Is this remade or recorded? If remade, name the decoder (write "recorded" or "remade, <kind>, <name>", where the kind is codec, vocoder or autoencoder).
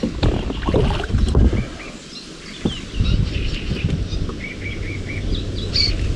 recorded